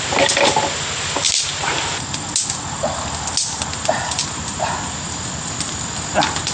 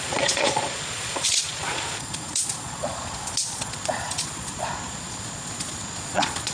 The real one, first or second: first